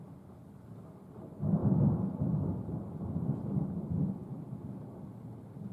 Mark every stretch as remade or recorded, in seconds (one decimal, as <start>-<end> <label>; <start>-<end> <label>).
0.0-5.7 recorded